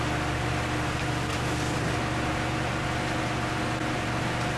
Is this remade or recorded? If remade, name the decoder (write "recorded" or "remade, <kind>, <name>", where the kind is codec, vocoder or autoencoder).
recorded